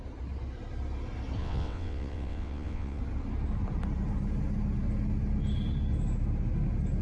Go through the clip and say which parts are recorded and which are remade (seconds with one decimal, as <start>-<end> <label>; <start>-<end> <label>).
0.0-1.4 recorded; 1.4-3.0 remade; 3.0-7.0 recorded